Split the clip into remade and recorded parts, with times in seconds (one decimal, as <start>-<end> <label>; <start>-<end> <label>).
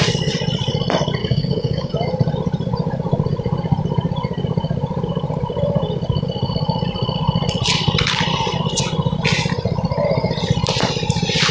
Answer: 0.0-1.2 recorded; 1.2-1.9 remade; 1.9-11.5 recorded